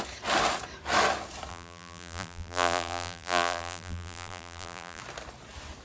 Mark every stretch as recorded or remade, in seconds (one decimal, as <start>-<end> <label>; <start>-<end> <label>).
0.0-1.5 recorded; 1.5-5.0 remade; 5.0-5.8 recorded